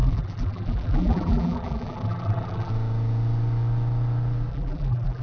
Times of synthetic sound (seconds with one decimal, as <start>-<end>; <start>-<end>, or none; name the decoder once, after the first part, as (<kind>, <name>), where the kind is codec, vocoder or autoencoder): 0.0-2.7 (vocoder, BigVGAN v2); 4.5-5.2